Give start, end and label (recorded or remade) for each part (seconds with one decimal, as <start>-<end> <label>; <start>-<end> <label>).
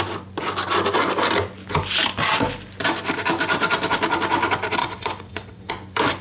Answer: 0.0-4.8 recorded; 4.8-5.7 remade; 5.7-6.2 recorded